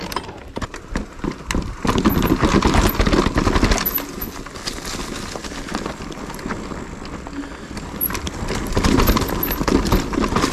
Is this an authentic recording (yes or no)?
yes